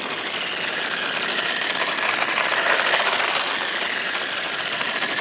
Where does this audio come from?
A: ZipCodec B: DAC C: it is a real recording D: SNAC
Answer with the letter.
C